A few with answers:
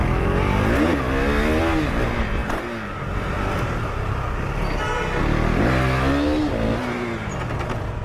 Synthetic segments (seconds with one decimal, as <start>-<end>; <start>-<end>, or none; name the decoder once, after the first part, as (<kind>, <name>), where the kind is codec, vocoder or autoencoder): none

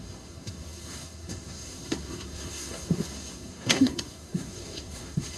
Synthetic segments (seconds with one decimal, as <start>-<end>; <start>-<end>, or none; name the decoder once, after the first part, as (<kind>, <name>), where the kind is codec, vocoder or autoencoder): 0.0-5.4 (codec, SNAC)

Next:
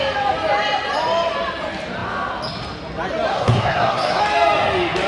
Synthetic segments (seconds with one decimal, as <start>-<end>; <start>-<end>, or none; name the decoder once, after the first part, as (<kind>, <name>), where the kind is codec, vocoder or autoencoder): 3.3-4.2 (codec, SNAC)

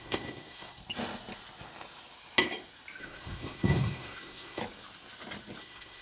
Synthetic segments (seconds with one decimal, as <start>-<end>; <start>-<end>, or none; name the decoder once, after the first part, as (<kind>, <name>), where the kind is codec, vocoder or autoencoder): 0.0-0.8 (codec, SNAC); 3.0-4.6; 5.6-6.0

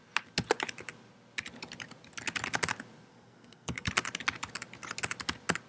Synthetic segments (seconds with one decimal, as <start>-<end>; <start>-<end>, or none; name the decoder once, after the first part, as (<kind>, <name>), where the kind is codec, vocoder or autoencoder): 3.1-3.9 (codec, SNAC)

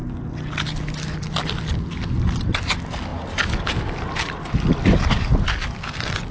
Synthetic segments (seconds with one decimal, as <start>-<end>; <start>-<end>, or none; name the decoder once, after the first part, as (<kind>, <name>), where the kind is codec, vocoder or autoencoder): none